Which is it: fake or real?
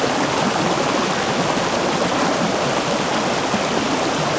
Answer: real